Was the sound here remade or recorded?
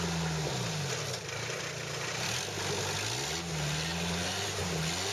recorded